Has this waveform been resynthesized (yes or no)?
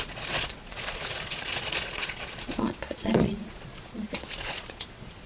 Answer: yes